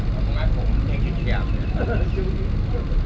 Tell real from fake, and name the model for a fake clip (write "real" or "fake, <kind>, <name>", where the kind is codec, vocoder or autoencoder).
real